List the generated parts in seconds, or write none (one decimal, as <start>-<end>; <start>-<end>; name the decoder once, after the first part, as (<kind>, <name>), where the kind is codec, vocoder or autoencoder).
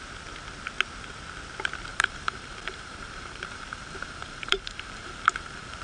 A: 1.9-5.8 (vocoder, BigVGAN v2)